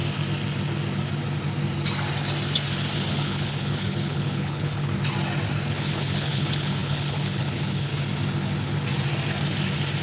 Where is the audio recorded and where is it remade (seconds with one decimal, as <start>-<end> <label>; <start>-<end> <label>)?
0.0-3.1 recorded; 3.1-4.9 remade; 4.9-5.7 recorded; 5.7-7.9 remade; 7.9-10.0 recorded